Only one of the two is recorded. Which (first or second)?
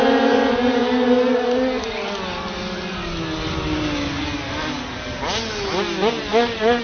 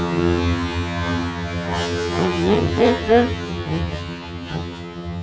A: first